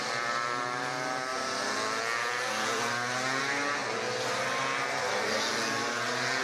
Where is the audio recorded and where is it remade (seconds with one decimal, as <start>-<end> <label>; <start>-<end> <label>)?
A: 0.0-6.4 recorded